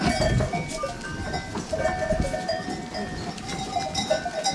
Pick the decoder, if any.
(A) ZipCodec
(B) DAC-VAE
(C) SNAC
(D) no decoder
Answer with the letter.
D